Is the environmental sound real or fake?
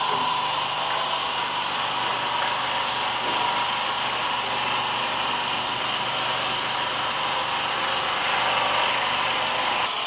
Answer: real